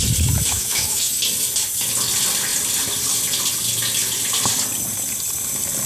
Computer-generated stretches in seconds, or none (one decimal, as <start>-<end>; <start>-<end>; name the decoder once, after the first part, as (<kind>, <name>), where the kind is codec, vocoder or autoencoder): 0.5-1.2 (autoencoder, DAC-VAE)